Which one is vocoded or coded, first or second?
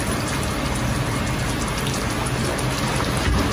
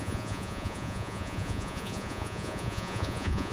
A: second